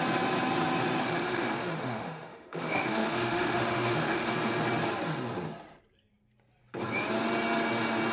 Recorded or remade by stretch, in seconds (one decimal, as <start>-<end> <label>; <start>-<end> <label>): 0.0-1.0 recorded; 1.0-4.3 remade; 4.3-8.1 recorded